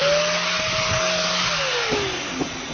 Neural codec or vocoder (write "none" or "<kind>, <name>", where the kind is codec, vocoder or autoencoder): none